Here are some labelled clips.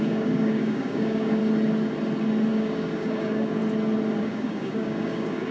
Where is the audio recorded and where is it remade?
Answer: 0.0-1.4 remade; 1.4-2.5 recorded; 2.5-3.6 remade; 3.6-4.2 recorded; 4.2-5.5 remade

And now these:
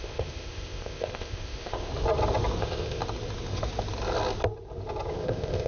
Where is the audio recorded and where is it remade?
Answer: 0.0-1.9 remade; 1.9-2.6 recorded; 2.6-3.0 remade; 3.0-5.1 recorded; 5.1-5.7 remade

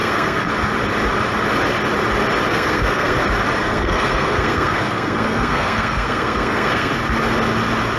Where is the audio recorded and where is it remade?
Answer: 0.0-0.5 remade; 0.5-2.5 recorded; 2.5-3.2 remade; 3.2-3.6 recorded; 3.6-6.9 remade; 6.9-8.0 recorded

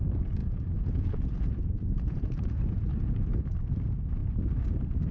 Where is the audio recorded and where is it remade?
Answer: 0.0-0.4 recorded; 0.4-3.2 remade; 3.2-5.1 recorded

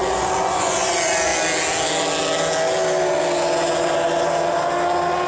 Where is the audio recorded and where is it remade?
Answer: 0.0-0.9 remade; 0.9-5.3 recorded

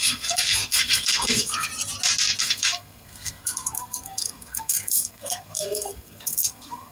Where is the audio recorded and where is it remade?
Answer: 0.0-1.7 remade; 1.7-2.4 recorded; 2.4-6.9 remade

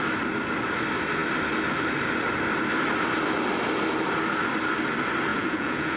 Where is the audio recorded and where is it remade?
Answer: 0.0-5.3 recorded; 5.3-6.0 remade